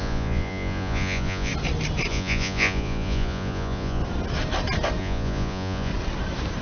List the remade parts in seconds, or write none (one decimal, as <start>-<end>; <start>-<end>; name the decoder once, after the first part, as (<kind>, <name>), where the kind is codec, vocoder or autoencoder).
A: 0.0-1.5 (vocoder, Vocos); 2.1-4.0; 5.0-5.9